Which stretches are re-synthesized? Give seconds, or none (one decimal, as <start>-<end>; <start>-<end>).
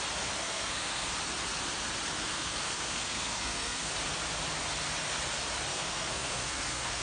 0.4-1.1; 2.3-3.9; 5.7-7.0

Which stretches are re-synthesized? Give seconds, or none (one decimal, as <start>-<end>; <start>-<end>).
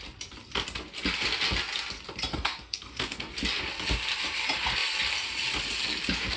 2.3-3.3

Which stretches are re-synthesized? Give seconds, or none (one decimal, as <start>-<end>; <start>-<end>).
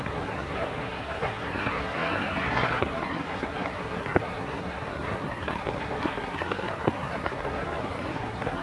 0.0-8.6